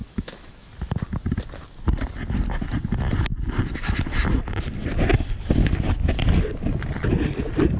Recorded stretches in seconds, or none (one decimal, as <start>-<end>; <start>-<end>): 0.7-7.8